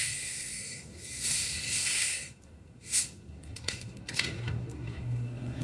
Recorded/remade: remade